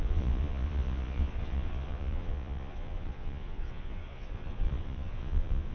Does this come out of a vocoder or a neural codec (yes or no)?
yes